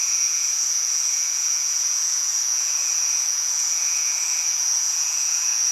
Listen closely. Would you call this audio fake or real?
fake